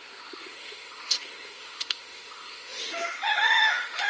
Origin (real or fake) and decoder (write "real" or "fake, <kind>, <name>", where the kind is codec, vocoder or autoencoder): fake, autoencoder, DAC-VAE